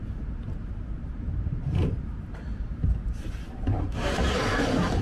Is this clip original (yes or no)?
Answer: no